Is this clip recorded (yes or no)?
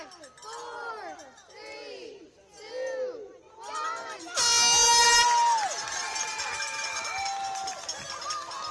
yes